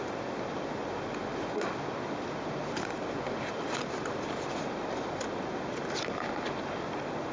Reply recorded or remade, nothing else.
recorded